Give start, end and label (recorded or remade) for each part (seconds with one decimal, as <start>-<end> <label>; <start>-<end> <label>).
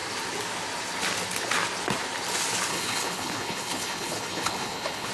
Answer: 0.0-2.7 recorded; 2.7-5.1 remade